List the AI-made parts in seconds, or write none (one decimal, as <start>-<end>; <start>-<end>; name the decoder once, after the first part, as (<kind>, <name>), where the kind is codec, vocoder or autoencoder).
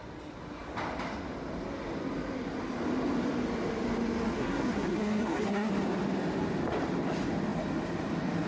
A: 4.4-5.7 (codec, SNAC)